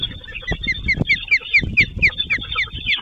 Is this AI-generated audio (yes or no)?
no